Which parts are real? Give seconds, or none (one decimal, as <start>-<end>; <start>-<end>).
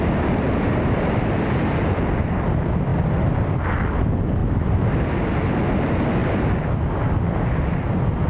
0.0-2.9; 3.6-8.3